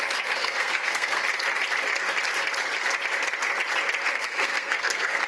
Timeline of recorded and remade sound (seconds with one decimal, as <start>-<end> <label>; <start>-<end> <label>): 0.0-1.2 remade; 1.2-4.1 recorded; 4.1-5.3 remade